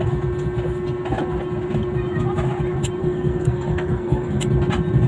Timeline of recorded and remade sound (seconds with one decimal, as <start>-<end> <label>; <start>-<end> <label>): 0.0-3.0 recorded; 3.0-4.4 remade; 4.4-5.1 recorded